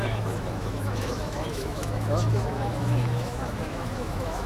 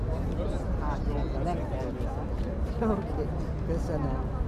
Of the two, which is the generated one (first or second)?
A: first